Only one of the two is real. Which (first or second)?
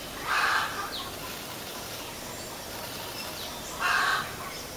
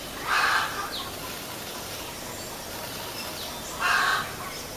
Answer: second